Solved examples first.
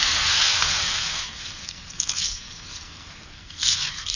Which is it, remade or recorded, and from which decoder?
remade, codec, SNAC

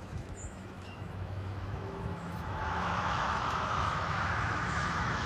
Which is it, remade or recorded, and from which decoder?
remade, autoencoder, DAC-VAE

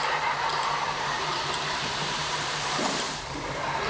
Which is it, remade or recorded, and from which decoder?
remade, vocoder, BigVGAN v2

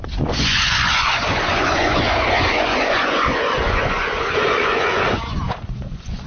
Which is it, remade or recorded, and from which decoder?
remade, vocoder, Vocos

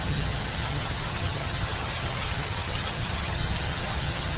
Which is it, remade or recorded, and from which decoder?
remade, vocoder, HiFi-GAN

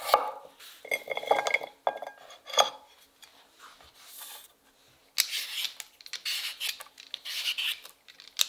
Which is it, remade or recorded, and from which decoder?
recorded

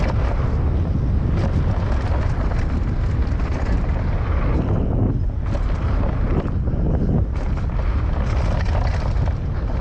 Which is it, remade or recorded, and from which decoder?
recorded